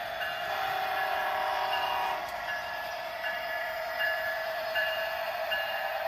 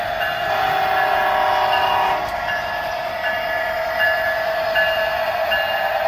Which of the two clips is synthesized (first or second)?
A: first